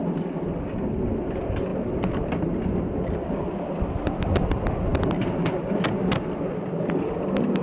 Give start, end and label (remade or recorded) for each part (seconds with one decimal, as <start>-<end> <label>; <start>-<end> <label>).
0.0-7.6 recorded